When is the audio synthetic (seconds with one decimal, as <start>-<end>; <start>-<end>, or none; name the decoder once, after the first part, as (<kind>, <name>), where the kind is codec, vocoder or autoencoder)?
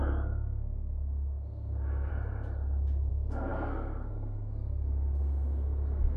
0.0-2.1 (codec, SNAC); 3.1-6.2